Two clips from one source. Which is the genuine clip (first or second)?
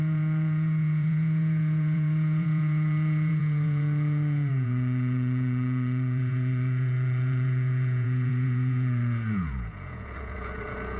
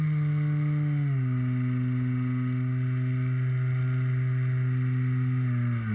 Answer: second